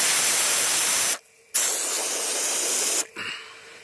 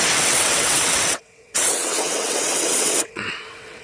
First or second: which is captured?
first